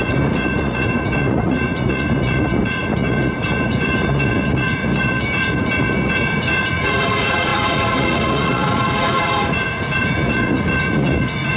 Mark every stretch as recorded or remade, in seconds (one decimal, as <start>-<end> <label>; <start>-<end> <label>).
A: 0.0-11.6 remade